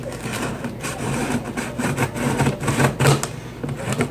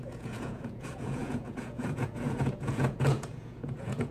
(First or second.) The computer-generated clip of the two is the second